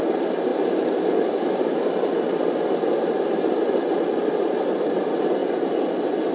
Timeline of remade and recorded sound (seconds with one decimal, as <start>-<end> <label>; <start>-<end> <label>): 0.0-6.3 recorded